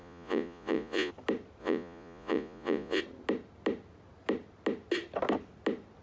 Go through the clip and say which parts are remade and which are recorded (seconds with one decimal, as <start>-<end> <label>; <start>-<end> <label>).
0.0-1.1 remade; 1.1-1.6 recorded; 1.6-3.0 remade; 3.0-6.0 recorded